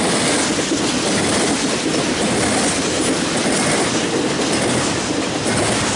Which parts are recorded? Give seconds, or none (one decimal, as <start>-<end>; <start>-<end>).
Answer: 0.0-6.0